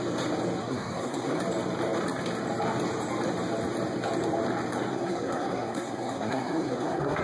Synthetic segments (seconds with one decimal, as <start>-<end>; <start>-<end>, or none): 0.6-1.4; 4.9-7.2